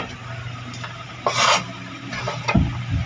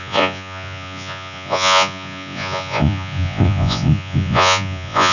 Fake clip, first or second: second